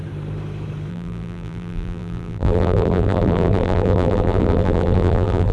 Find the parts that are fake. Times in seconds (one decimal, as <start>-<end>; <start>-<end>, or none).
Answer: 0.9-5.5